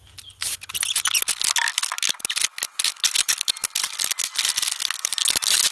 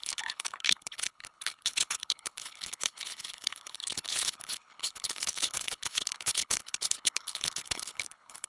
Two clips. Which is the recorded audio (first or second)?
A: first